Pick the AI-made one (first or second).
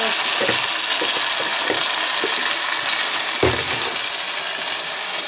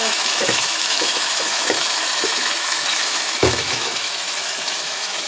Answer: second